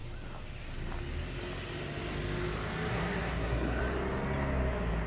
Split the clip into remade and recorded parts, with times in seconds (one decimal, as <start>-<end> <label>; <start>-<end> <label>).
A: 0.0-2.9 recorded; 2.9-3.8 remade; 3.8-5.1 recorded